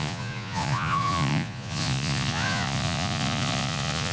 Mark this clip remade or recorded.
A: remade